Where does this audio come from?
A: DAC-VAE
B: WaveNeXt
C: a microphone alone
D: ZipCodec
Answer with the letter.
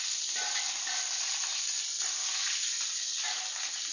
C